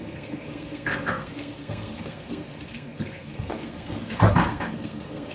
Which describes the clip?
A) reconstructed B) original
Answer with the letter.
A